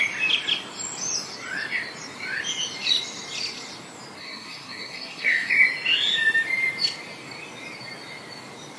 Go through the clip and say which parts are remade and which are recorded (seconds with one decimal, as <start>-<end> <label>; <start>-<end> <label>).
0.0-4.2 recorded; 4.2-5.5 remade; 5.5-8.8 recorded